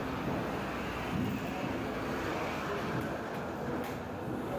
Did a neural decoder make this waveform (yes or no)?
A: no